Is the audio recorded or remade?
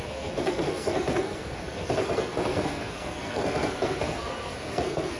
remade